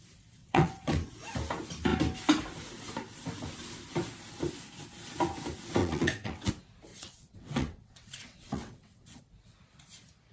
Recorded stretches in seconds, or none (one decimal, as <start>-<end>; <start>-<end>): 0.0-0.4; 1.1-5.8; 6.5-6.9; 9.2-10.3